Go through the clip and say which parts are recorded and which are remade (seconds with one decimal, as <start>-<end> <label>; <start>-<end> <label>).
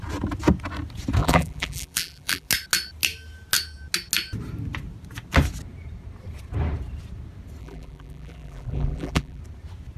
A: 0.0-1.2 recorded; 1.2-2.5 remade; 2.5-7.6 recorded; 7.6-9.4 remade; 9.4-10.0 recorded